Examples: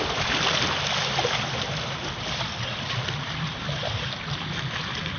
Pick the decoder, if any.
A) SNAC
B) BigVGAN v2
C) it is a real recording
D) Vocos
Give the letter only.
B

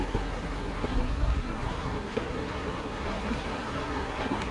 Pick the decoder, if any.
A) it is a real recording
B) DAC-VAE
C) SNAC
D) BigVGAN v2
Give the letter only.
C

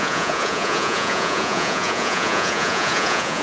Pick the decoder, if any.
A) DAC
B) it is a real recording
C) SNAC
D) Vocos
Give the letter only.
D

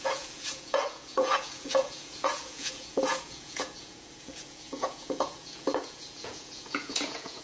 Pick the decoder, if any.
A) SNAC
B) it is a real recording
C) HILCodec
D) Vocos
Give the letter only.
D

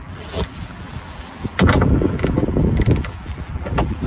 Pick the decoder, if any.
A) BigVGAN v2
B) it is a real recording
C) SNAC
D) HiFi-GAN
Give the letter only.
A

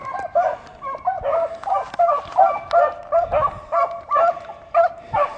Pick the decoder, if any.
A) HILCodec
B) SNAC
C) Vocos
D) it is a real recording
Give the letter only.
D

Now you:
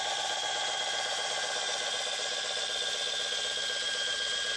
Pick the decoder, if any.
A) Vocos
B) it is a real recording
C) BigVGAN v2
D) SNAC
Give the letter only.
C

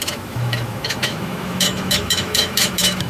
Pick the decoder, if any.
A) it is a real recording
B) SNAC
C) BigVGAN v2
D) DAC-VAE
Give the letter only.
D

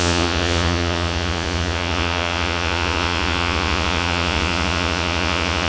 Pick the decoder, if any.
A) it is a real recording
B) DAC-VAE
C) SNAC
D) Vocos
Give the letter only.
D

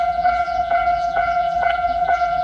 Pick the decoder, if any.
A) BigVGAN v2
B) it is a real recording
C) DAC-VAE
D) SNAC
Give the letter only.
A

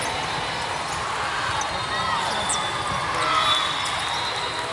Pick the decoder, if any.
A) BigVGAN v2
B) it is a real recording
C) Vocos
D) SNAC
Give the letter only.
B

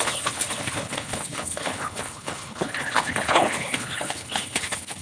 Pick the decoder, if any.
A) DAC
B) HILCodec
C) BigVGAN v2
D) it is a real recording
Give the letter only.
B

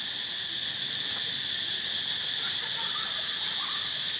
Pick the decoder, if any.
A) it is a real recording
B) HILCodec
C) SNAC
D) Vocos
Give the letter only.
A